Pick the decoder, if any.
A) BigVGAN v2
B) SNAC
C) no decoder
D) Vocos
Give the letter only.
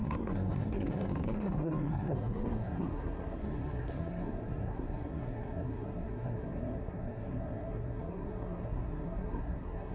B